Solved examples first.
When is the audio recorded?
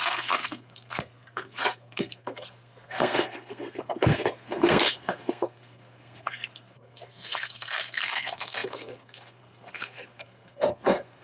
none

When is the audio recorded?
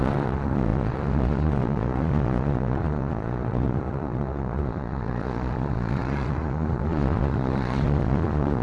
none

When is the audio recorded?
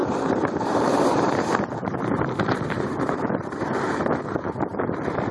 none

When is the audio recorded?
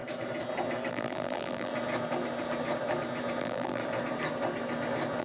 0.0-0.9; 1.7-3.4; 3.8-5.2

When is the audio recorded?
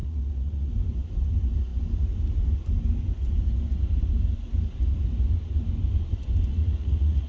0.7-6.6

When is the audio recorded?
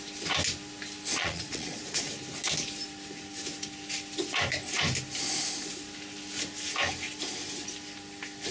0.0-1.1; 2.1-8.5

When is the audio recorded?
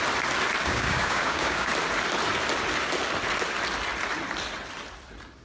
0.0-0.6; 1.7-5.4